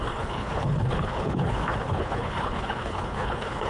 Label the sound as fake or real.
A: fake